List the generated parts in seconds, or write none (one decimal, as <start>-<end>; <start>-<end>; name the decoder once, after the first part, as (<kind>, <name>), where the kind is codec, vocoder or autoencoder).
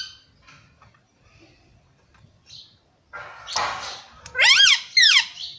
none